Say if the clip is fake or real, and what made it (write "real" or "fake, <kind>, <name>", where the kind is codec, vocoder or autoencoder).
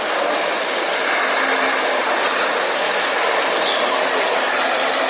real